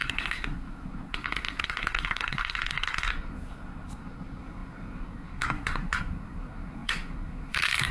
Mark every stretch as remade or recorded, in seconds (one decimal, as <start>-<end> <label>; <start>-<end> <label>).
0.0-7.9 remade